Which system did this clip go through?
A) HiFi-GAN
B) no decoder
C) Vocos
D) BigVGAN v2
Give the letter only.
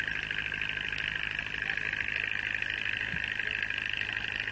B